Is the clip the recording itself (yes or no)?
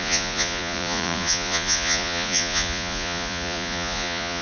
no